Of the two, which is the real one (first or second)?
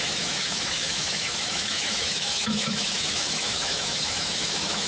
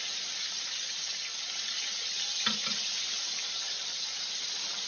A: second